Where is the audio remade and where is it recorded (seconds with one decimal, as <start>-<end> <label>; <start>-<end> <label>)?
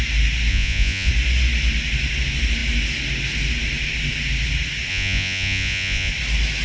0.0-0.5 recorded; 0.5-1.1 remade; 1.1-4.9 recorded; 4.9-6.1 remade; 6.1-6.6 recorded